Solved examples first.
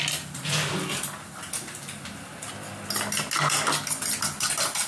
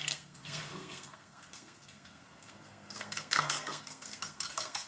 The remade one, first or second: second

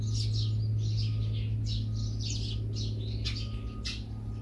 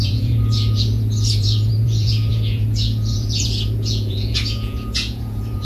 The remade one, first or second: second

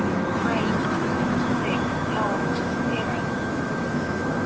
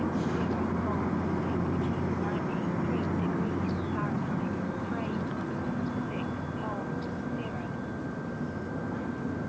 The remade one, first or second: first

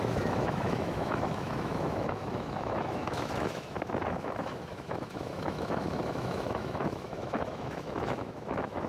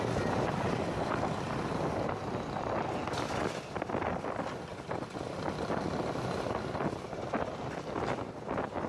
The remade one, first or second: first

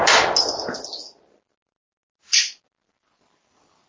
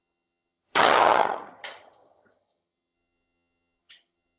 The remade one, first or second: second